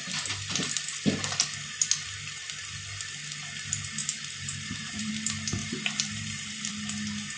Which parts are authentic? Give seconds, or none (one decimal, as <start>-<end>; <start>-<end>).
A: 0.0-4.0; 5.1-5.6; 6.7-7.4